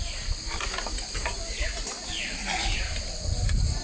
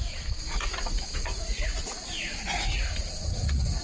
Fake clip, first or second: second